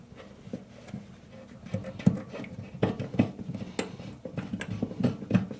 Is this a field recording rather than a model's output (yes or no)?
yes